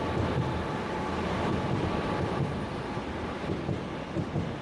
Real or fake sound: real